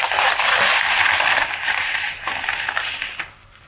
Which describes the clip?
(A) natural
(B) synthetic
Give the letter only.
A